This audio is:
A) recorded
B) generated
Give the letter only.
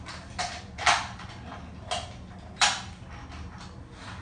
A